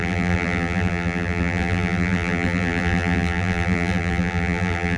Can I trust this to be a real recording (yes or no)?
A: no